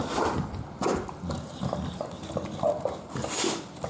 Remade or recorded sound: recorded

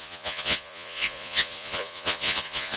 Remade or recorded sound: remade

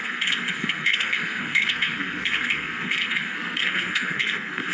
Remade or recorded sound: remade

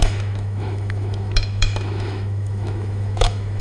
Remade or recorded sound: remade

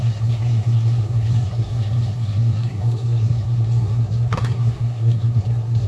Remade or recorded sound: remade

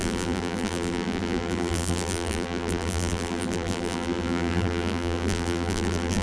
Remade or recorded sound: remade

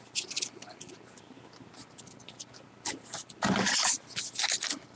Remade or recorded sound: recorded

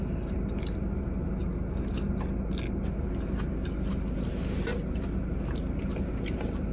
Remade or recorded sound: recorded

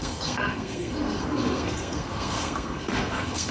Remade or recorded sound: remade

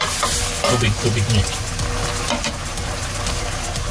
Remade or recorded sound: recorded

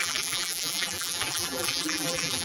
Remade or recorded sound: remade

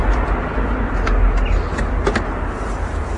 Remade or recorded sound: recorded